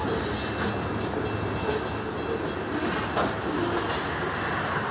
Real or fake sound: real